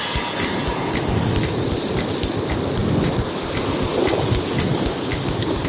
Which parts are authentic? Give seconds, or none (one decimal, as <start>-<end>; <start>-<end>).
0.0-5.7